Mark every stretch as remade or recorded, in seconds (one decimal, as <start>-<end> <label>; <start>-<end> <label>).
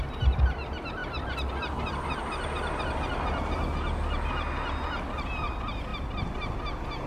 0.0-7.1 recorded